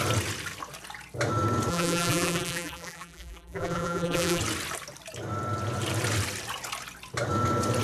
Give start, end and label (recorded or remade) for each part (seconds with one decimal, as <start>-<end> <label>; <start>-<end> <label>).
0.0-1.7 recorded; 1.7-4.4 remade; 4.4-7.8 recorded